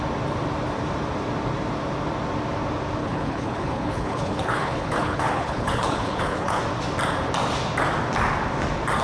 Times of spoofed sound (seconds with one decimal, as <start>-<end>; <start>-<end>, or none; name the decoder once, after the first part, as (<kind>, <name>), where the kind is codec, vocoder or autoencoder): 3.0-6.6 (codec, HILCodec)

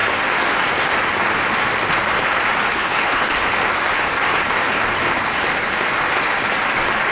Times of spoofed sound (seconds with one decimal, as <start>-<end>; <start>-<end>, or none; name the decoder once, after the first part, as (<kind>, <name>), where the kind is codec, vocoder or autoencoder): 2.7-3.3 (codec, HILCodec)